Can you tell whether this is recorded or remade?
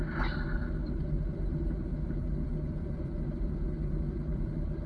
remade